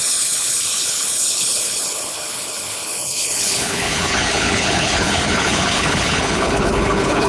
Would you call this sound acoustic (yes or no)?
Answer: no